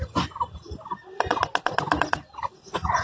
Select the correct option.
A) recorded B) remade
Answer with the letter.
A